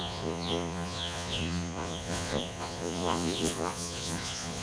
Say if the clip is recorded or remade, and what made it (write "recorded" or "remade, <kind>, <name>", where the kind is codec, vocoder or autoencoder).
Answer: remade, vocoder, Vocos